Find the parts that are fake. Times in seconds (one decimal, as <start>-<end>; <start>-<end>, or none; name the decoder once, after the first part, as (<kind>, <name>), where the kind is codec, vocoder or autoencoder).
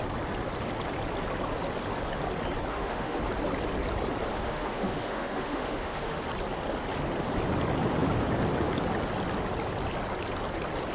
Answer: 2.7-3.2 (autoencoder, DAC-VAE); 4.3-6.2